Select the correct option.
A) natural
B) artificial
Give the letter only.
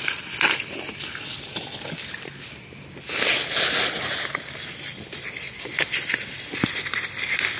A